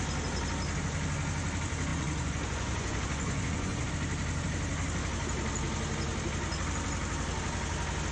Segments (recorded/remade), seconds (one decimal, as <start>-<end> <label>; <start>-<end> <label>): 0.0-1.9 recorded; 1.9-3.9 remade; 3.9-8.1 recorded